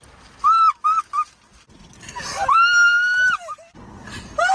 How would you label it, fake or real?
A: real